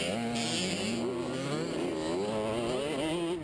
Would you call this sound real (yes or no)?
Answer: yes